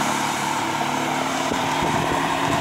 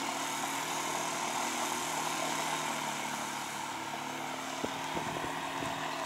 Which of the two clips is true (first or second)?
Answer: second